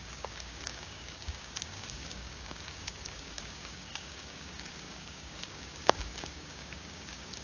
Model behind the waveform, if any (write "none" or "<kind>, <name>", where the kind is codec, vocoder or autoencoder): codec, DAC